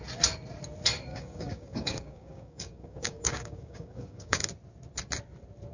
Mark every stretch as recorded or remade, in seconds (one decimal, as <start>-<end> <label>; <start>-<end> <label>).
0.0-1.1 recorded; 1.1-4.5 remade; 4.5-5.7 recorded